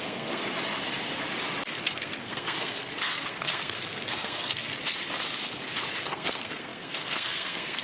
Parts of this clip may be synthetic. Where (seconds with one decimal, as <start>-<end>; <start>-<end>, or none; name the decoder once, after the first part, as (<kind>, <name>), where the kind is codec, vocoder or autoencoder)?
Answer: 0.0-0.4 (codec, SNAC); 1.8-4.7; 6.0-7.8